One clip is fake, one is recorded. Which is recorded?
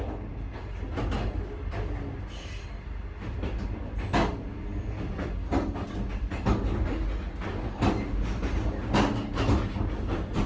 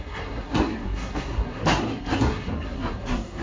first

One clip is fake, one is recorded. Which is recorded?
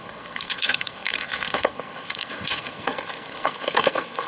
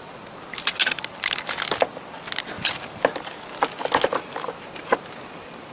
second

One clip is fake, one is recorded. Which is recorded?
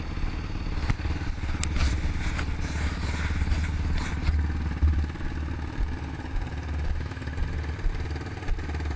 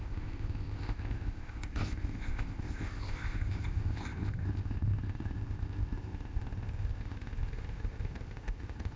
first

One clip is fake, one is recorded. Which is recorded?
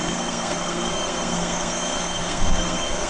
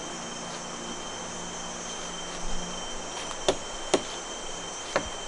second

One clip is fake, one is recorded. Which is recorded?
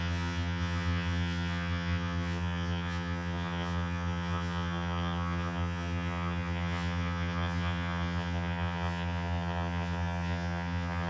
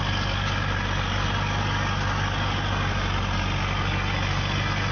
second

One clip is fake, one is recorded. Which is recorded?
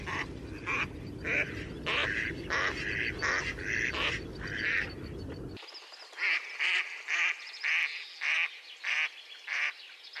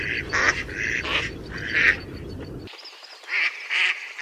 first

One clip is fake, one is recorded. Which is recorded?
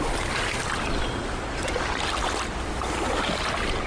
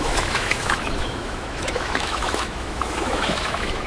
first